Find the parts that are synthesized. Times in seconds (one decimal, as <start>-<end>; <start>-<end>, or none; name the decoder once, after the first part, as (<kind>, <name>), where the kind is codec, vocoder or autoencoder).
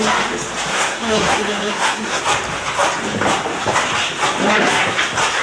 0.7-2.2 (codec, SNAC); 4.5-5.0